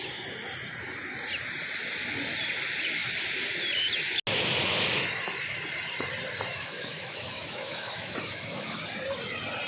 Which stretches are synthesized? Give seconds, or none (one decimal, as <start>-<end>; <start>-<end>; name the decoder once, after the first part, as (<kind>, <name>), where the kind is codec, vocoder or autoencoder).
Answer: 6.5-8.8 (autoencoder, DAC-VAE)